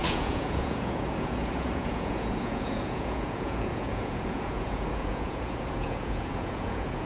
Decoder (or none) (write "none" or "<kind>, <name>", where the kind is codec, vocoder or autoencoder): vocoder, Vocos